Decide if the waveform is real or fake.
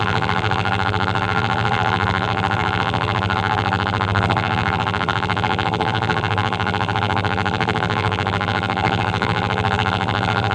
fake